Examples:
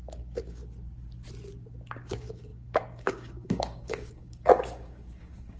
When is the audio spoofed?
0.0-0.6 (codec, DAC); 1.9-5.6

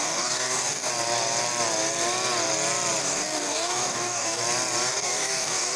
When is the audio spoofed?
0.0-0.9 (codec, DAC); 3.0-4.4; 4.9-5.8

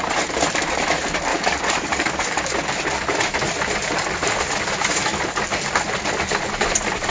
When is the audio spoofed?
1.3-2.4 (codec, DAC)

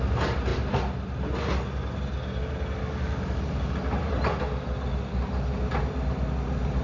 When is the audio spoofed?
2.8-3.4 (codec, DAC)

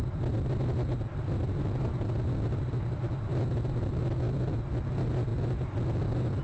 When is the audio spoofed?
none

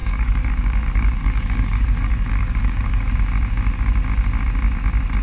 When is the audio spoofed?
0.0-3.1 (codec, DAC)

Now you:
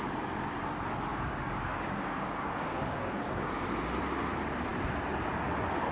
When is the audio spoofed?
1.1-3.6 (codec, DAC)

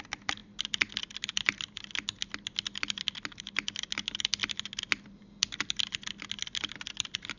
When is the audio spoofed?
none